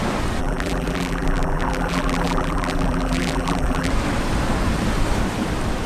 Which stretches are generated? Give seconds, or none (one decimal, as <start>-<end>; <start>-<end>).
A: 0.4-3.9